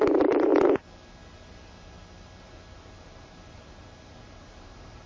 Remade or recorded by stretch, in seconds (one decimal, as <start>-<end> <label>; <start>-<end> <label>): 0.0-0.5 remade; 0.5-2.4 recorded; 2.4-5.1 remade